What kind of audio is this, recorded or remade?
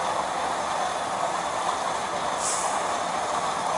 recorded